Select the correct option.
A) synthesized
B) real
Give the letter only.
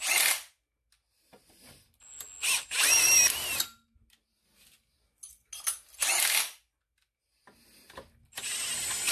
B